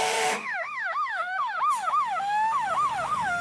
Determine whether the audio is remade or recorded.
remade